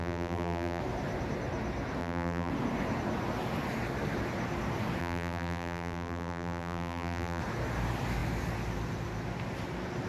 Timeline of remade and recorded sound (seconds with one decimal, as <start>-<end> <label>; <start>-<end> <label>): 0.0-0.8 remade; 0.8-2.0 recorded; 2.0-2.5 remade; 2.5-5.0 recorded; 5.0-7.4 remade; 7.4-10.1 recorded